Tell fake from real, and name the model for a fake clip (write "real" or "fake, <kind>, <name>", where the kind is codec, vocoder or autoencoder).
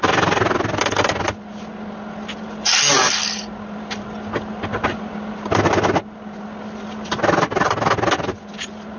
real